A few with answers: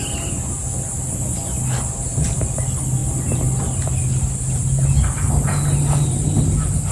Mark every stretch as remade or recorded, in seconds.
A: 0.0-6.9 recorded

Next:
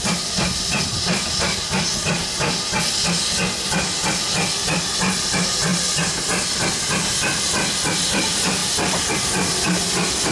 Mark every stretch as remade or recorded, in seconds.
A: 0.0-8.6 recorded; 8.6-9.2 remade; 9.2-10.3 recorded

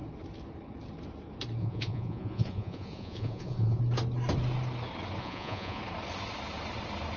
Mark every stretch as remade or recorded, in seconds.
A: 0.0-1.6 recorded; 1.6-3.8 remade; 3.8-5.2 recorded; 5.2-5.8 remade; 5.8-7.2 recorded

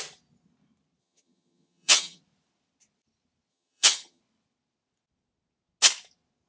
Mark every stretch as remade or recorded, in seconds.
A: 0.0-1.0 recorded; 1.0-2.2 remade; 2.2-3.5 recorded; 3.5-4.2 remade; 4.2-6.5 recorded

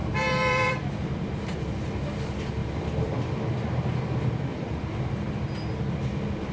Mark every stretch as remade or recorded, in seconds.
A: 0.0-1.3 remade; 1.3-2.6 recorded; 2.6-3.2 remade; 3.2-4.5 recorded; 4.5-5.3 remade; 5.3-6.5 recorded